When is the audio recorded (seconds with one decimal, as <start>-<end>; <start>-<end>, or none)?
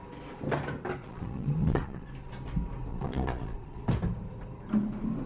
0.0-1.0; 2.1-2.9; 3.8-5.3